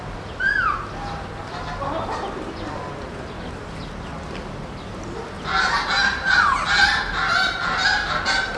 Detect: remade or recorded recorded